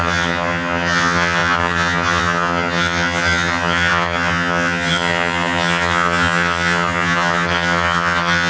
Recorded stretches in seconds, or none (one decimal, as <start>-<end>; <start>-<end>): none